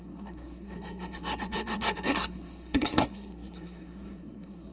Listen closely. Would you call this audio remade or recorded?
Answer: remade